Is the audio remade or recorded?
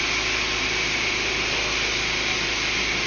recorded